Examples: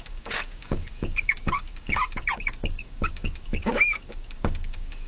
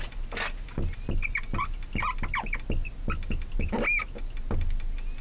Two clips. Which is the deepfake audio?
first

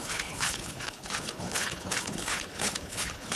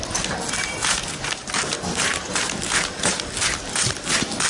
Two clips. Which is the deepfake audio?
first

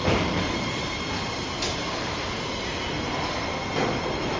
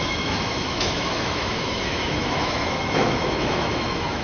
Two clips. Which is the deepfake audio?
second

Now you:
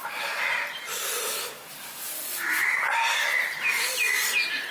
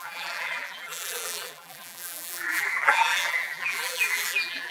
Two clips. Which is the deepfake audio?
second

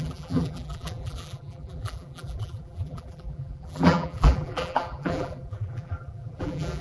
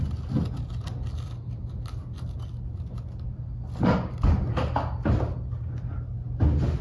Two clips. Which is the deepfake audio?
first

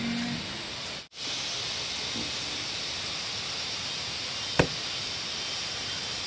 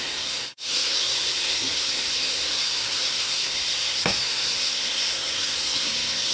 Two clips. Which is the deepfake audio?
second